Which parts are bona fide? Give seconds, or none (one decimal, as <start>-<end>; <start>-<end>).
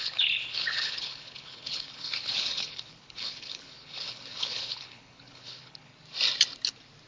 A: 5.9-7.1